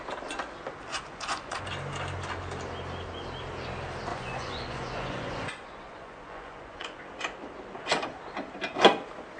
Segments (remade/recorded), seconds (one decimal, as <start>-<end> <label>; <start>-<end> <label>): 0.0-0.9 recorded; 0.9-1.7 remade; 1.7-4.1 recorded; 4.1-7.0 remade; 7.0-9.4 recorded